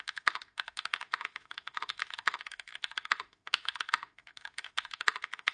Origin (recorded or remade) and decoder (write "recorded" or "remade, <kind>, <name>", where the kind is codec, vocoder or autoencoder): remade, autoencoder, DAC-VAE